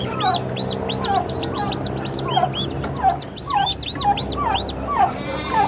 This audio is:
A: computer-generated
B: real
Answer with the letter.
B